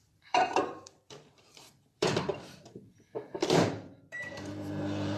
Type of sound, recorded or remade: remade